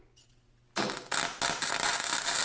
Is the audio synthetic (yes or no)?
no